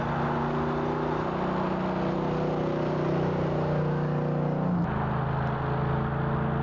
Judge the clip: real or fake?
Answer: real